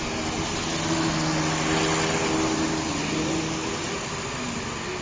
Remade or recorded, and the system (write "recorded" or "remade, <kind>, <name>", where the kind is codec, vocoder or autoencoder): recorded